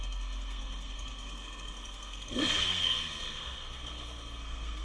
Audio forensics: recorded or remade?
remade